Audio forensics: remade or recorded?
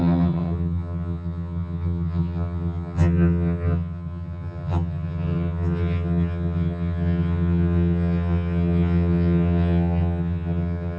remade